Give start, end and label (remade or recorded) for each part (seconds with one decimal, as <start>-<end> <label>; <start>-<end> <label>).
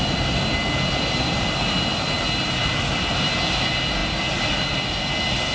0.0-2.6 recorded; 2.6-3.2 remade; 3.2-4.0 recorded; 4.0-4.5 remade; 4.5-5.5 recorded